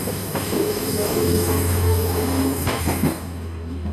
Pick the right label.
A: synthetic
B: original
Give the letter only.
A